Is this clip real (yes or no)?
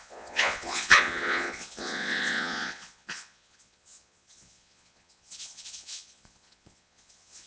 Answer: no